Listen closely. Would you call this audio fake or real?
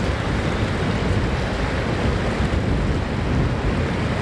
real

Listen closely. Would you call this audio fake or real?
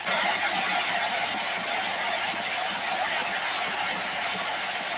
real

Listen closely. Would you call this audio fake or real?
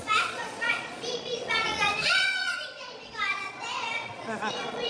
fake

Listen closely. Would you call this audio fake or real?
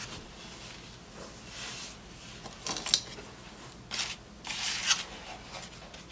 real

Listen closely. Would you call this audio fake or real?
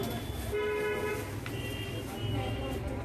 real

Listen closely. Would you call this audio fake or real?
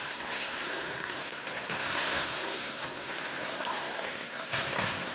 fake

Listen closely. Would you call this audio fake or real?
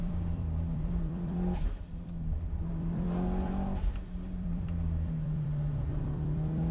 fake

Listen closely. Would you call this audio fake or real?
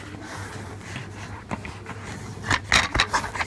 real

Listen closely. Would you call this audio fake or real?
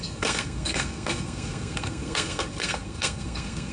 fake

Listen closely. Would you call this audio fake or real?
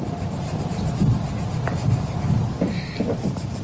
real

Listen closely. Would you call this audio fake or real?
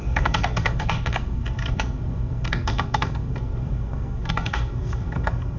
fake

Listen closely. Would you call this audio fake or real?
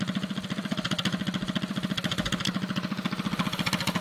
real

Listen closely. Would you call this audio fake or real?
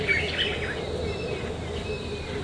real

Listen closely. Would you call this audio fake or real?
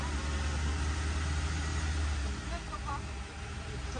real